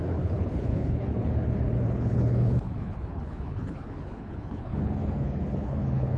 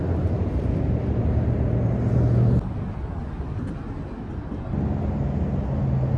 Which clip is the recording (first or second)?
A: second